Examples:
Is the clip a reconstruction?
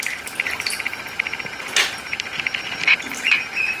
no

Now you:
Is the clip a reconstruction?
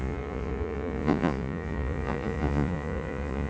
yes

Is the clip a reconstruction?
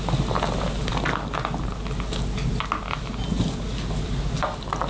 no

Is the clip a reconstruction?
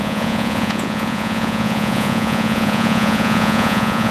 yes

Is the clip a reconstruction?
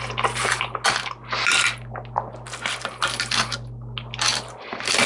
no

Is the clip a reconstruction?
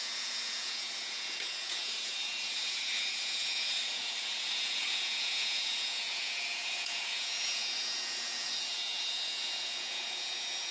yes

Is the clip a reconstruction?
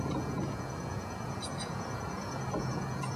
yes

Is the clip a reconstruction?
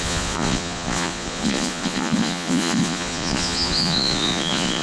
yes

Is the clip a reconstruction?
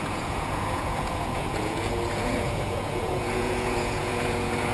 yes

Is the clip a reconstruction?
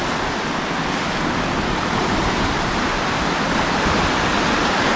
no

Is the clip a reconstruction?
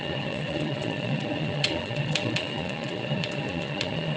yes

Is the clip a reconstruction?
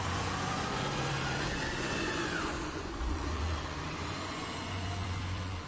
yes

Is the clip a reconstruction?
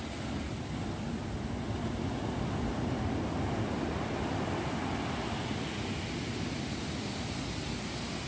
no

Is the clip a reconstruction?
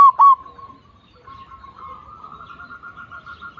no